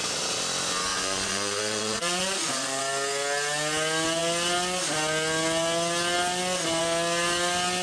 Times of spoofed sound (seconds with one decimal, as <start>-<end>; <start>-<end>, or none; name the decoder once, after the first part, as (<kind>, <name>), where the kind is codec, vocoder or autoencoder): 0.9-2.8 (vocoder, Vocos)